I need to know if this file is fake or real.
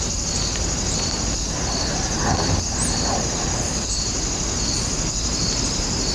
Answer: real